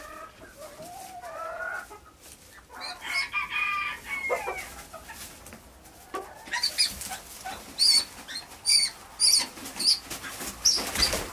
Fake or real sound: real